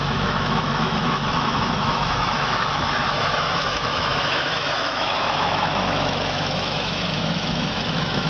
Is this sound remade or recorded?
remade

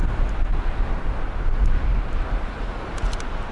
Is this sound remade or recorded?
recorded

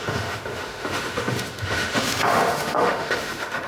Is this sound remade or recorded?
remade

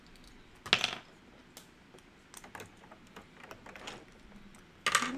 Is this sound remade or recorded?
recorded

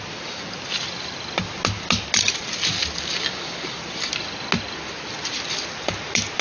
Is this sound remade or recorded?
recorded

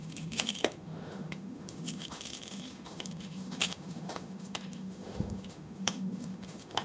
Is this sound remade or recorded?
remade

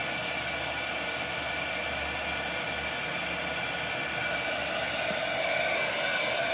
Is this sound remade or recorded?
recorded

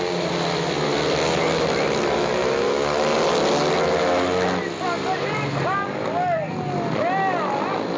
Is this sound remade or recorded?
recorded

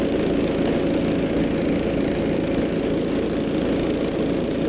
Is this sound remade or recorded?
recorded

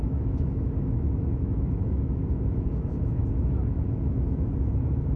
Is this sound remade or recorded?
remade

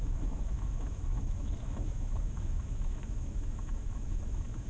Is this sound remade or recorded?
remade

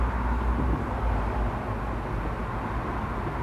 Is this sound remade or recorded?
recorded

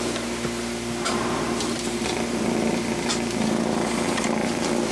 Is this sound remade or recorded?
recorded